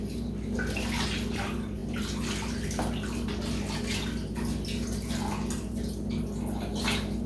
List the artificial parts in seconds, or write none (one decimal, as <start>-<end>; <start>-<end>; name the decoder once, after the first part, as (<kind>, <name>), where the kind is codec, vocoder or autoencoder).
none